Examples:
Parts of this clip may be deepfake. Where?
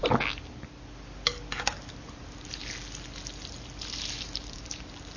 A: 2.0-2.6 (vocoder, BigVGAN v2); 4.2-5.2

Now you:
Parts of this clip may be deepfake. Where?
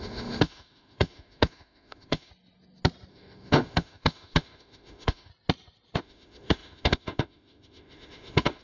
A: 0.0-2.3 (autoencoder, DAC-VAE); 3.1-5.3; 6.0-8.6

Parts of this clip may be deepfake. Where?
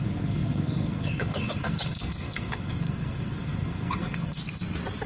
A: 0.0-4.4 (codec, SNAC)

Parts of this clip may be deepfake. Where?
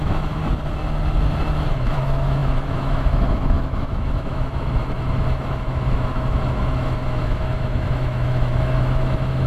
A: 0.0-0.4 (autoencoder, DAC-VAE); 1.7-9.5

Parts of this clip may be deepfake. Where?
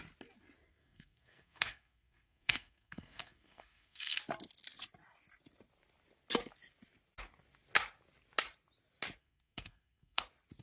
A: 0.7-4.2 (codec, SNAC); 9.2-10.2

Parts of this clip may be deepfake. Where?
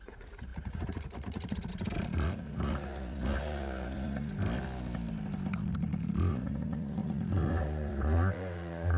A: 0.0-4.3 (vocoder, Vocos); 5.5-9.0